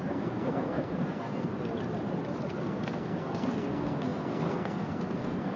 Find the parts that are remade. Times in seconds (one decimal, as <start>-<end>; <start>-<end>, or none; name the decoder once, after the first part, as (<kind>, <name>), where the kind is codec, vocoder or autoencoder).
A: 0.0-1.5 (codec, SNAC); 2.4-5.6

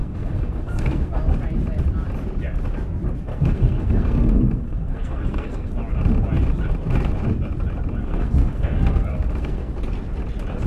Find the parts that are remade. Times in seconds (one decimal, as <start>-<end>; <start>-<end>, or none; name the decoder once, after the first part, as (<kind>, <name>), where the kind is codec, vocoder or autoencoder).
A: 0.0-1.1 (codec, SNAC); 3.3-5.7; 8.0-9.7

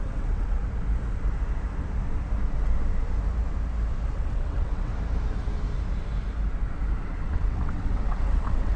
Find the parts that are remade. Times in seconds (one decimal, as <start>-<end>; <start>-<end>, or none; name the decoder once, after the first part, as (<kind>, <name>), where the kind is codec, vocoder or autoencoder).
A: 0.0-0.6 (vocoder, WaveNeXt); 4.1-4.9; 7.0-8.8

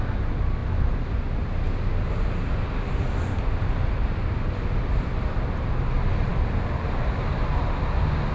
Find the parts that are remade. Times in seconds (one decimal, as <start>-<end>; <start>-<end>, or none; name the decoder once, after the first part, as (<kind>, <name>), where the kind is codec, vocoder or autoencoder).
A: 6.3-7.6 (vocoder, BigVGAN v2)

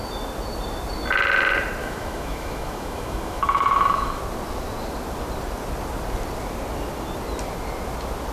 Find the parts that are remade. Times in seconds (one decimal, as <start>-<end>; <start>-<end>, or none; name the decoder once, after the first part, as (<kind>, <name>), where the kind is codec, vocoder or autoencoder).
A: 1.8-4.2 (autoencoder, DAC-VAE)

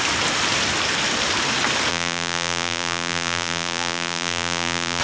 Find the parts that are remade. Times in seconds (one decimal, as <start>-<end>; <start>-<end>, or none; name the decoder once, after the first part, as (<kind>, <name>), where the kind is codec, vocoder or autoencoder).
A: 1.9-5.0 (vocoder, BigVGAN v2)